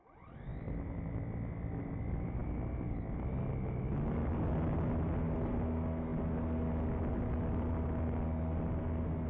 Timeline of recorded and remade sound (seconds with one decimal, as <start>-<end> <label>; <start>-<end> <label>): 0.0-9.3 recorded